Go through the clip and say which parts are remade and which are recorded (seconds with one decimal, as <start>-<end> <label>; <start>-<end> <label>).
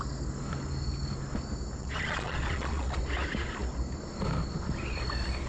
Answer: 0.0-1.8 recorded; 1.8-3.0 remade; 3.0-5.5 recorded